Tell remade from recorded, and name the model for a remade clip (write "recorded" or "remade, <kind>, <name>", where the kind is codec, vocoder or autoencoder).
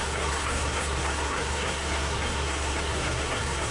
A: remade, codec, SNAC